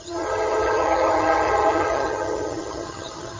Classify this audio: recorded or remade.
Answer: remade